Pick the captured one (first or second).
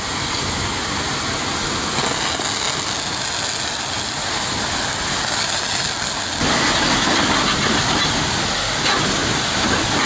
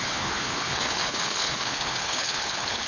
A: first